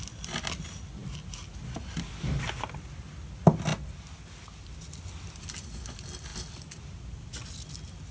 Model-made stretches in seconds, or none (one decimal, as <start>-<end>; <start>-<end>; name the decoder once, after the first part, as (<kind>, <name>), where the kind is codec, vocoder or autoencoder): none